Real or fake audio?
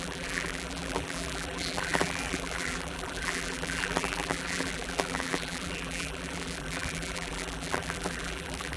fake